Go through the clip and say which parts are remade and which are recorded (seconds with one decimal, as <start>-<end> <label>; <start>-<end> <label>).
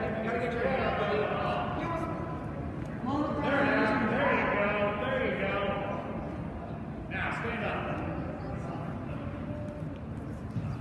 0.0-5.3 recorded; 5.3-6.2 remade; 6.2-10.8 recorded